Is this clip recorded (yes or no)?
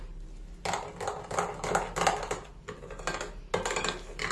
yes